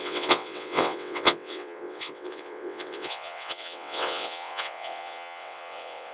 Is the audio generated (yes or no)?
yes